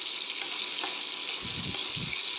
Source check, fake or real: real